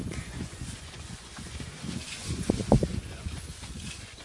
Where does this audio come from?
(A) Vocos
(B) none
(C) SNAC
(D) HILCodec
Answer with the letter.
A